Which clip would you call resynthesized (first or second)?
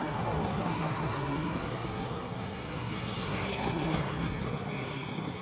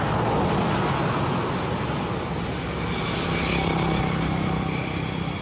first